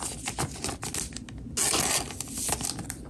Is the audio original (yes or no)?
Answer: yes